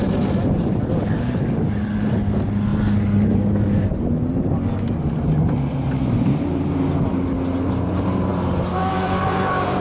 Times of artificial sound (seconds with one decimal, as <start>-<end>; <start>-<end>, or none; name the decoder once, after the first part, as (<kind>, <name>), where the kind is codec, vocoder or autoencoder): 8.3-9.8 (vocoder, BigVGAN v2)